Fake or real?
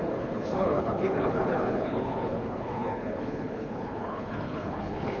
fake